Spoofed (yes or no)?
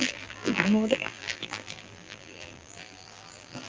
yes